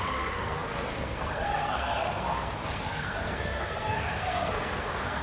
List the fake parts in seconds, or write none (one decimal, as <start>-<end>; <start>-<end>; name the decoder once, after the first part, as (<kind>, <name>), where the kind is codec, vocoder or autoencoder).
0.0-5.2 (codec, SNAC)

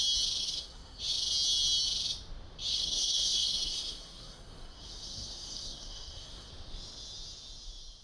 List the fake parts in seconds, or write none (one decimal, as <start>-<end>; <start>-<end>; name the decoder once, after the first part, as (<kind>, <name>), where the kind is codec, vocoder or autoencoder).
0.4-1.0 (codec, SNAC); 2.7-6.5

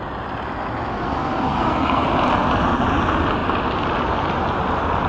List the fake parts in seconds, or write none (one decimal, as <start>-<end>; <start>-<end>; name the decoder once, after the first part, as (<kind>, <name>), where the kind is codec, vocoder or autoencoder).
0.9-2.1 (codec, SNAC)